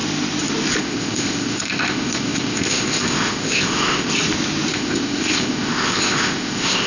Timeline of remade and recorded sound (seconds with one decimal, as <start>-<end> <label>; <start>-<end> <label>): 0.0-0.8 recorded; 0.8-4.1 remade; 4.1-4.7 recorded; 4.7-6.9 remade